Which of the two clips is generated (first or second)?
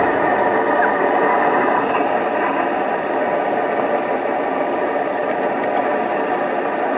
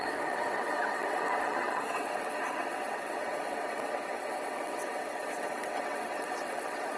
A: second